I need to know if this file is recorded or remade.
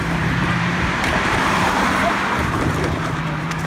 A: remade